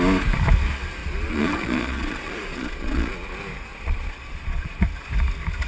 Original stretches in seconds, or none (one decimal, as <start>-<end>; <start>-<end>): 0.0-1.0; 3.1-3.7; 4.7-5.7